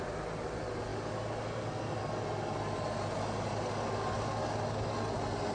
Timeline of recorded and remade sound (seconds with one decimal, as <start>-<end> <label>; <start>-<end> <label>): 0.0-5.5 recorded